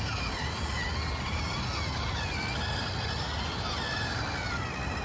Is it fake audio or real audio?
real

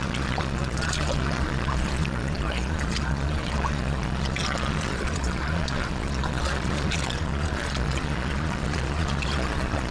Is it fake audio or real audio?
fake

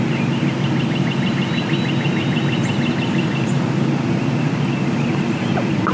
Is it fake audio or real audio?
real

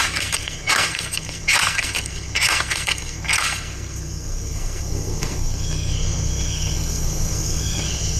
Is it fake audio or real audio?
fake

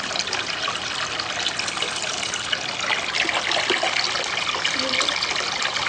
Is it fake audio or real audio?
real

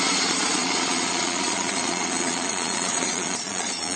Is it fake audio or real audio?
fake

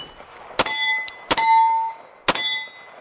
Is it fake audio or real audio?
real